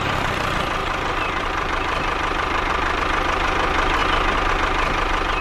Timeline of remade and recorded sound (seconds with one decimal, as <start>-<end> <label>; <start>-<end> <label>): 0.0-0.8 recorded; 0.8-3.0 remade; 3.0-5.4 recorded